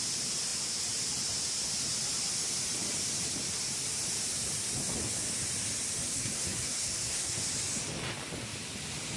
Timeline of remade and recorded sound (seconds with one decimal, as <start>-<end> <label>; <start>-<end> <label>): 0.0-6.1 recorded; 6.1-7.4 remade; 7.4-9.2 recorded